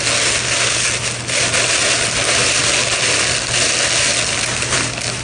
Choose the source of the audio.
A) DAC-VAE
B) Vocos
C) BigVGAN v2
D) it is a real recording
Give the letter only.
D